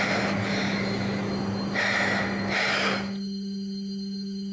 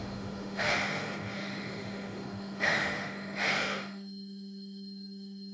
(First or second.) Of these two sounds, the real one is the first